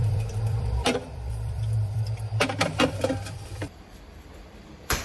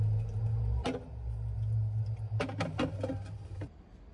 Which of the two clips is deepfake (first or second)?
first